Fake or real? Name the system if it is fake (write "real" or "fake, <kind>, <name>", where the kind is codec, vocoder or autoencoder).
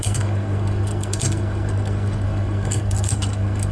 fake, codec, SNAC